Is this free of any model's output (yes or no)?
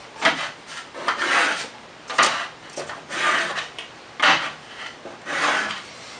yes